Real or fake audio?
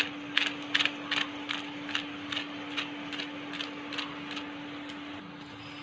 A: real